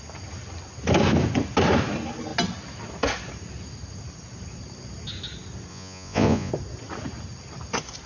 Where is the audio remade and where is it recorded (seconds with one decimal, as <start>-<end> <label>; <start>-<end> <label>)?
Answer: 0.0-5.7 recorded; 5.7-6.5 remade; 6.5-8.1 recorded